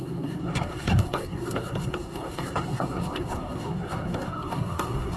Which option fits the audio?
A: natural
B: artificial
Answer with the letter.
B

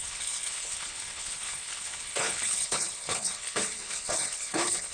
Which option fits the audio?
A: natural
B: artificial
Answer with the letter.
B